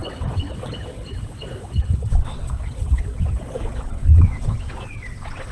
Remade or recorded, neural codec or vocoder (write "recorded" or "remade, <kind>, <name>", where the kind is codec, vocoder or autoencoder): remade, vocoder, WaveNeXt